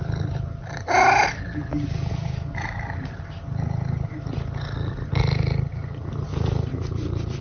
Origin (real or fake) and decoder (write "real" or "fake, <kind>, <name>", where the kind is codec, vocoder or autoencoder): real